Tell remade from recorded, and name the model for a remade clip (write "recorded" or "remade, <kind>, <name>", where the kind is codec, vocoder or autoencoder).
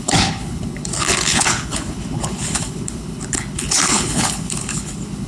remade, codec, HILCodec